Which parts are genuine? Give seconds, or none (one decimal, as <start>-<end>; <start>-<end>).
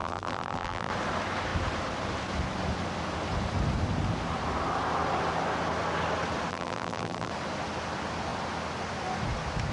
0.9-6.5; 7.3-9.7